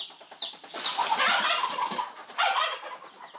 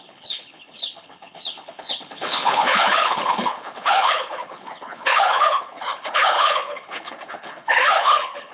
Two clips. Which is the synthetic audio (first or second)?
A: second